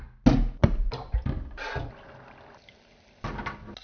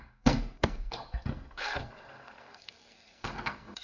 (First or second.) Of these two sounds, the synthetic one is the second